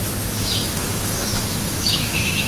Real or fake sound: fake